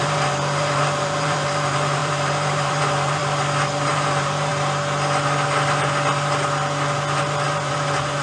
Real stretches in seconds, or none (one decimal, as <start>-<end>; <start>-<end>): 3.2-3.9; 4.5-7.2